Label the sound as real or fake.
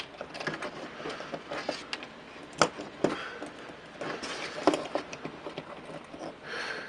real